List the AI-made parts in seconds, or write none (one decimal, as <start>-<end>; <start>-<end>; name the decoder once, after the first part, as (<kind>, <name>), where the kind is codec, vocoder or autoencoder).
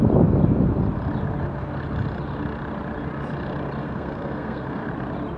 3.8-4.9 (codec, SNAC)